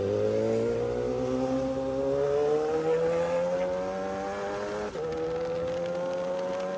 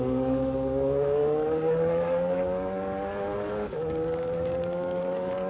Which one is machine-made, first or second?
second